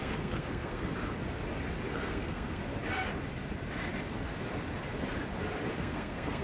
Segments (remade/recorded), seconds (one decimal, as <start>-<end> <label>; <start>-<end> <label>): 0.0-0.9 remade; 0.9-1.9 recorded; 1.9-2.6 remade; 2.6-5.7 recorded; 5.7-6.4 remade